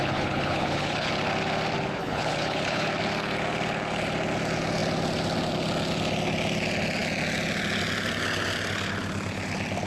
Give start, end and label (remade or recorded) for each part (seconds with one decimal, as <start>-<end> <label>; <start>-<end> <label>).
0.0-1.1 remade; 1.1-2.0 recorded; 2.0-2.9 remade; 2.9-9.9 recorded